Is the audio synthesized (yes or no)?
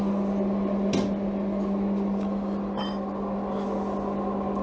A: no